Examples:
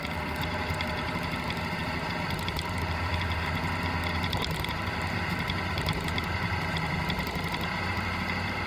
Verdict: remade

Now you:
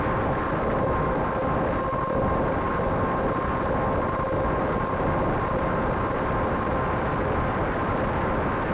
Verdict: recorded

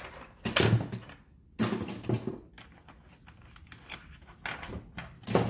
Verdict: recorded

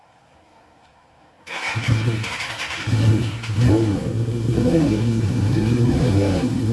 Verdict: remade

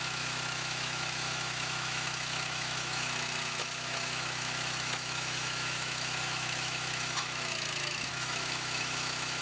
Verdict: remade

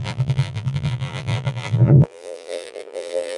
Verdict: remade